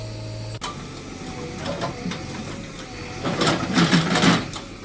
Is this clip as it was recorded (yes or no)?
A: yes